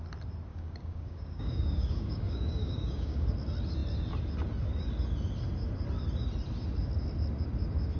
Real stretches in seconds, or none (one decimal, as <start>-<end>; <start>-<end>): 0.0-0.5; 3.3-8.0